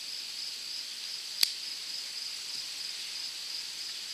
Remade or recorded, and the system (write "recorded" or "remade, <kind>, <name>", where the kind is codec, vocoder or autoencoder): recorded